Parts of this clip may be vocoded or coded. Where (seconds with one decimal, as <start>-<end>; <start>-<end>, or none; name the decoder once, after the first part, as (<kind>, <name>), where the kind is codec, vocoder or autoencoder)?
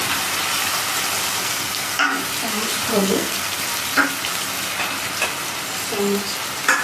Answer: 1.4-2.2 (codec, SNAC); 2.9-3.6